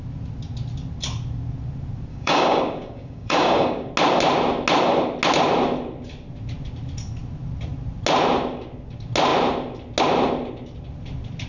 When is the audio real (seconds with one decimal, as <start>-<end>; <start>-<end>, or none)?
0.0-2.1; 3.9-11.5